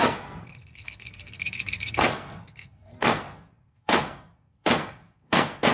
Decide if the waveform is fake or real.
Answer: fake